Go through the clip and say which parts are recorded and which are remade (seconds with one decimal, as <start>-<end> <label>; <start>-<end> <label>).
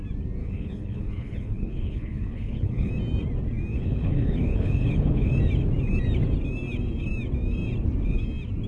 0.0-0.4 recorded; 0.4-2.9 remade; 2.9-3.7 recorded; 3.7-5.3 remade; 5.3-8.7 recorded